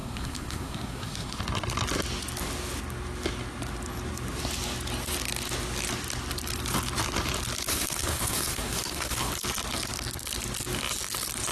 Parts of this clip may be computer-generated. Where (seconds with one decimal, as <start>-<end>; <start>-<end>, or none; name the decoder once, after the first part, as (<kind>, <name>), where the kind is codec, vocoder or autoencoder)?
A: 0.0-1.4 (codec, SNAC); 7.7-9.3